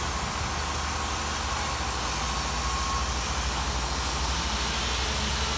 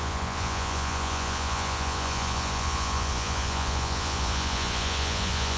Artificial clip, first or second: second